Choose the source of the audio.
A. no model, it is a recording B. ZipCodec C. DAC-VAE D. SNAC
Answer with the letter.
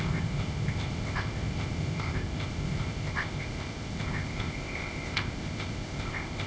B